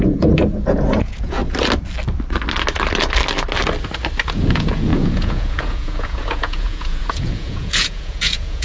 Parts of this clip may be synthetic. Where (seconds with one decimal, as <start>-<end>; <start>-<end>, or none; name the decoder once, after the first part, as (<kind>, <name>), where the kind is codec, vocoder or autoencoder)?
0.0-1.4 (vocoder, Vocos); 4.3-8.6

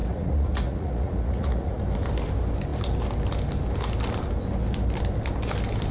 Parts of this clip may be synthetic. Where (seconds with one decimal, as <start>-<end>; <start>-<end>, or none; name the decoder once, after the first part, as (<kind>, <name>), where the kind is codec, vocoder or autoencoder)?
0.0-1.8 (vocoder, Vocos)

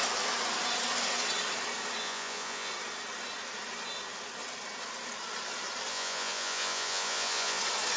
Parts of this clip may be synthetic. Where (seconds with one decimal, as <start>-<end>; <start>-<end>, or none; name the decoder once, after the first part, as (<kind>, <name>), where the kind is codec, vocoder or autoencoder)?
2.0-2.7 (vocoder, Vocos); 5.9-7.6

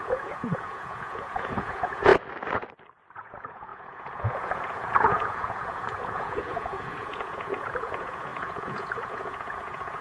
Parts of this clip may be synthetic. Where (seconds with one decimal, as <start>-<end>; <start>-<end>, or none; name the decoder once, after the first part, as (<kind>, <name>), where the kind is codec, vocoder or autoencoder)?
0.0-2.1 (vocoder, Vocos); 3.1-10.0

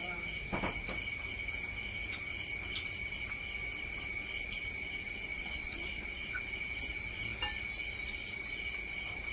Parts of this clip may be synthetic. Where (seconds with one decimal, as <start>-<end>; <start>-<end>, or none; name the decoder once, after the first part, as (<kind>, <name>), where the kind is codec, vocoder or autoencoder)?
5.3-6.3 (vocoder, Vocos)

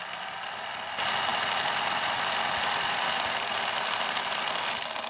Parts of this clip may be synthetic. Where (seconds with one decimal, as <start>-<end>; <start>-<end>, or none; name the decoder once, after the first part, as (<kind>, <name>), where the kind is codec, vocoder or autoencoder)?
none

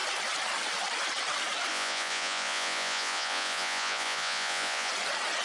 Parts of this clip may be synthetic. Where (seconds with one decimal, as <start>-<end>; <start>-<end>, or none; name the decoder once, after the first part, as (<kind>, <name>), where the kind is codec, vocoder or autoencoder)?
1.7-4.9 (vocoder, Vocos)

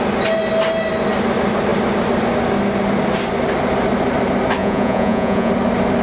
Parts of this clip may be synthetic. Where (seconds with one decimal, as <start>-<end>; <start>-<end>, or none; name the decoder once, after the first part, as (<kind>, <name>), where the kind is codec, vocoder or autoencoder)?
4.6-5.5 (vocoder, Vocos)